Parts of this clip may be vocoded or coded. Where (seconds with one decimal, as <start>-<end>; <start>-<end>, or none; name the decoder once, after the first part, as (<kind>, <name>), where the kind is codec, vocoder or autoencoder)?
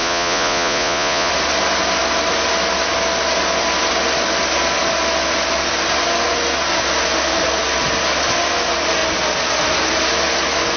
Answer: 0.0-1.3 (vocoder, Vocos)